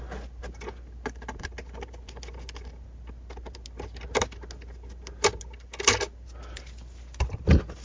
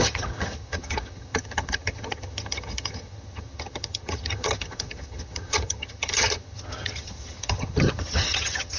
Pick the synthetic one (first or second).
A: second